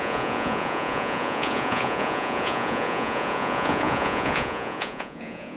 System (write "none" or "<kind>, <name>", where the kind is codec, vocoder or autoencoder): vocoder, Vocos